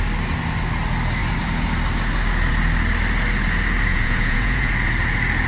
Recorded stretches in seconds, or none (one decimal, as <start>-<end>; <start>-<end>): 0.0-3.9; 4.7-5.5